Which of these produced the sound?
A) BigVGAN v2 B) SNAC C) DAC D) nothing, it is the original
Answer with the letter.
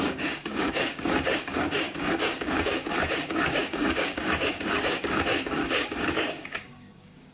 C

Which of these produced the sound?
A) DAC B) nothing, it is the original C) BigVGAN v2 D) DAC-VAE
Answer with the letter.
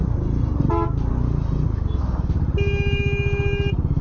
B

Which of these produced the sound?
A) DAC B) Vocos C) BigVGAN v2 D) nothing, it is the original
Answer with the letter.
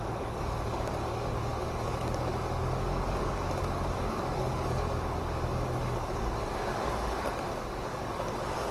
A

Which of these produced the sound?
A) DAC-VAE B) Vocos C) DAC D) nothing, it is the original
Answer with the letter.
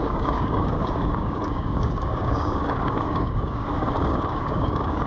C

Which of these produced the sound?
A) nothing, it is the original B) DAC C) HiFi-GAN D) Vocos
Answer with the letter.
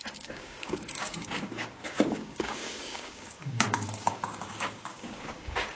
B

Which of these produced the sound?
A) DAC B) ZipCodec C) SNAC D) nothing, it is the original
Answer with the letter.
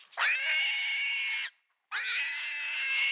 D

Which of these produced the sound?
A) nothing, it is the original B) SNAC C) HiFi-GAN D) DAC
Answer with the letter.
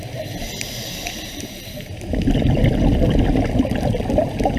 A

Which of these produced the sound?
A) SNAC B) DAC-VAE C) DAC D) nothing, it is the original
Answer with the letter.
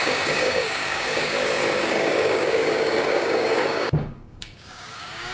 C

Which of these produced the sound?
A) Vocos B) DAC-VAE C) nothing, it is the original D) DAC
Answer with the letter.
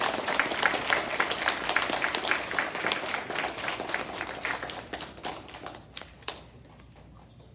C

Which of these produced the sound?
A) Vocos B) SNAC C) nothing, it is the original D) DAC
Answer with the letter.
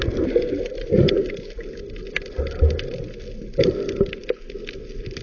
C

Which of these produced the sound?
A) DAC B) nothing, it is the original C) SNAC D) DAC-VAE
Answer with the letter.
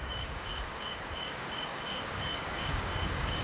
A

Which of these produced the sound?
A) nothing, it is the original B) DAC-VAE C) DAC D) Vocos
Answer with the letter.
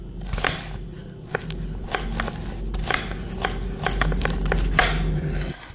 A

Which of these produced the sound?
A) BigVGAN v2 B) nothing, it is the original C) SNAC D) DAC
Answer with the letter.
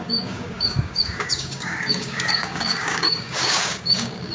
D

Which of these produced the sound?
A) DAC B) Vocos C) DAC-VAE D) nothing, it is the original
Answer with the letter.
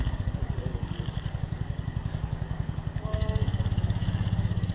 A